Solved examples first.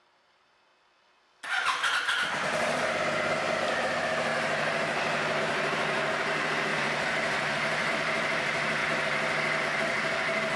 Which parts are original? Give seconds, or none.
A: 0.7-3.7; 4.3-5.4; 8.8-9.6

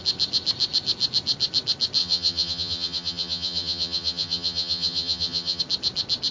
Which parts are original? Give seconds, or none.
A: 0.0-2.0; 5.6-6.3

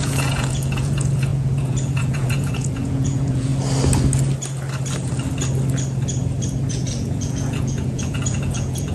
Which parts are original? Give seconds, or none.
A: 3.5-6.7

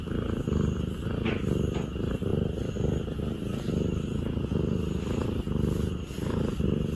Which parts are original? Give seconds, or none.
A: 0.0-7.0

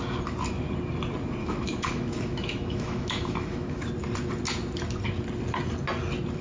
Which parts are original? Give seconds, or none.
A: 0.0-1.4; 3.9-6.4

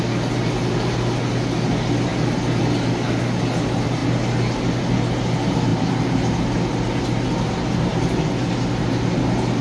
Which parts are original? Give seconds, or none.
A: 0.0-5.7; 6.4-9.6

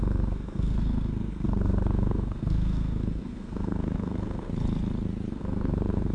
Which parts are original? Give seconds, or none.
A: 4.5-5.3

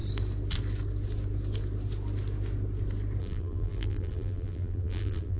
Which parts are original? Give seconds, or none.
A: 0.0-3.2